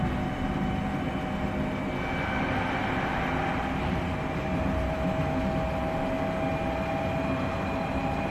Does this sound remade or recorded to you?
recorded